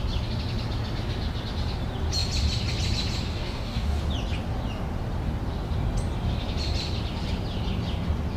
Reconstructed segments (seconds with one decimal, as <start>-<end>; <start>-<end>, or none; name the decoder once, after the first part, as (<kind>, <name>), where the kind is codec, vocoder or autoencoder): 3.3-4.0 (codec, DAC)